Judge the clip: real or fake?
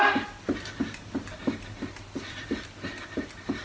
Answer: real